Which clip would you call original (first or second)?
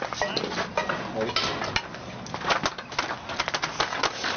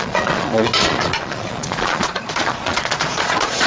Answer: first